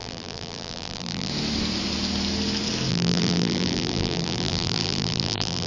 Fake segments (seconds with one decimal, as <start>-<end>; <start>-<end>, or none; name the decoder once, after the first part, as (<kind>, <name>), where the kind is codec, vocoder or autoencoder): 0.0-1.3 (vocoder, BigVGAN v2); 2.9-5.7